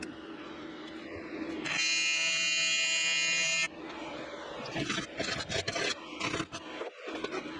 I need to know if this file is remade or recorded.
recorded